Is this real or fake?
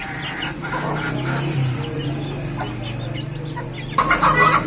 real